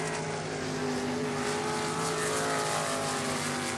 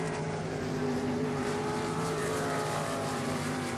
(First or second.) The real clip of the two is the first